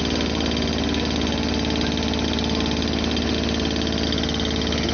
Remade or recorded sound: recorded